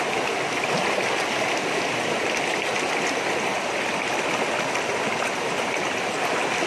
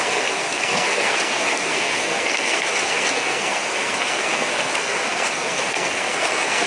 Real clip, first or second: first